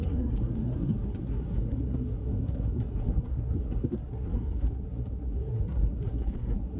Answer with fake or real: fake